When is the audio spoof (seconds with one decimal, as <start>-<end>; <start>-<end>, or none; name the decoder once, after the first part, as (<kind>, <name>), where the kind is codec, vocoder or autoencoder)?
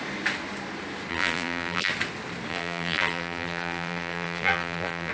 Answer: 1.1-1.9 (vocoder, BigVGAN v2); 2.5-5.1